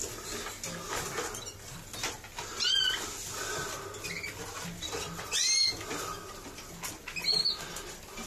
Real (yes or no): yes